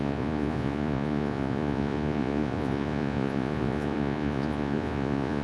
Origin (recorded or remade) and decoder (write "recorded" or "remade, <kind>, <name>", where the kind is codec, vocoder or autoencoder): remade, vocoder, Vocos